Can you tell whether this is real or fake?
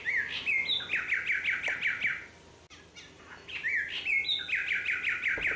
real